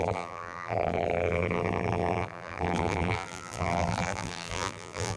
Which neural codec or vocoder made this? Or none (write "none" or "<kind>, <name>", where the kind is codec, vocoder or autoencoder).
vocoder, BigVGAN v2